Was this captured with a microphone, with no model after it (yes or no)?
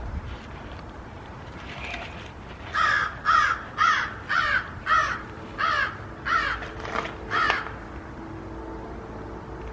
yes